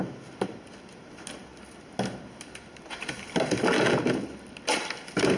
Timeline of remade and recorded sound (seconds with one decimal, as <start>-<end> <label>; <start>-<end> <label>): 0.0-5.4 recorded